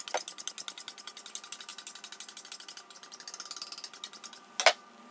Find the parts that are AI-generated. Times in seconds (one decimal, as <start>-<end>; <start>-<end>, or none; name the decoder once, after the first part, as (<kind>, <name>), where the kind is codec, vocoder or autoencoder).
none